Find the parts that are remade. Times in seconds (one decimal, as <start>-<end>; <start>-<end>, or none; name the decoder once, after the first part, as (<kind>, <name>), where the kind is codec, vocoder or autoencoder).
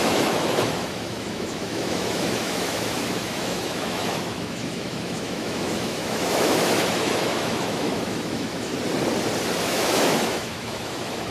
0.0-8.7 (autoencoder, DAC-VAE); 9.6-11.3